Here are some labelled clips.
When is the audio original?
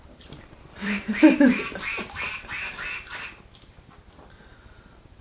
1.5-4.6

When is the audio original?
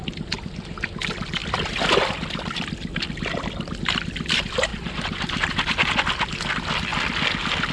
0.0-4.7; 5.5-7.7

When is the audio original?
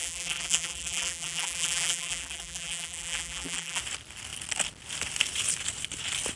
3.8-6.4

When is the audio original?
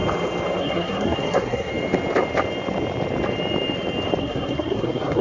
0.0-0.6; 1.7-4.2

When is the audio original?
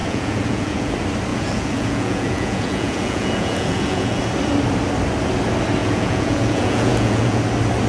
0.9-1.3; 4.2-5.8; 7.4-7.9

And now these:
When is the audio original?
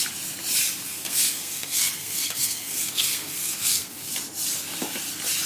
0.0-0.8; 4.1-5.5